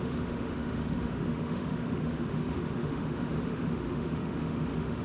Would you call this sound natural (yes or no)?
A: no